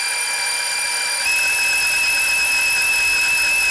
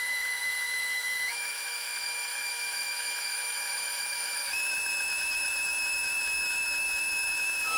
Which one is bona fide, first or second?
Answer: first